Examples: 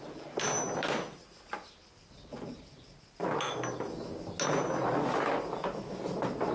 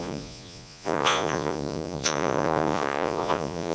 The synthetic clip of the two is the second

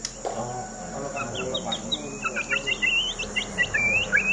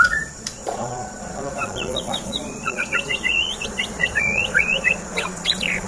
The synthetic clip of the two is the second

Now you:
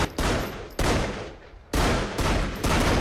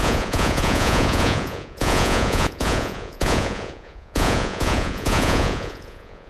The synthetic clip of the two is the second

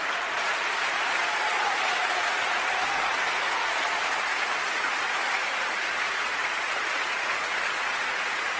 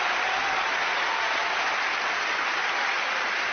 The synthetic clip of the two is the first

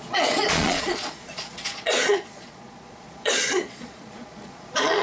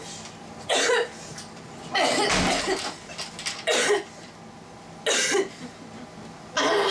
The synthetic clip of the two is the first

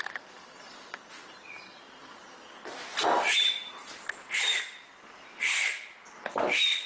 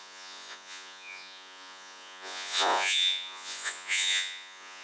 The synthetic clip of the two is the second